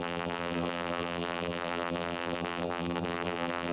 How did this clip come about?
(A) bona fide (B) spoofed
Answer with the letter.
B